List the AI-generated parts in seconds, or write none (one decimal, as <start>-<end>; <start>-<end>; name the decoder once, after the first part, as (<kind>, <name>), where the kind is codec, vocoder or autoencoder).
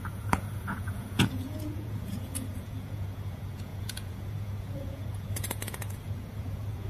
0.0-6.9 (vocoder, Vocos)